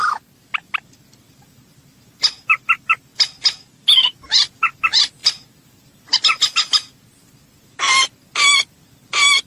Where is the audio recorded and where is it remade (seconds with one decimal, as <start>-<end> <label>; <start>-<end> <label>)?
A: 0.0-9.5 recorded